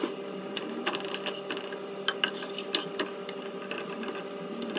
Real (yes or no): yes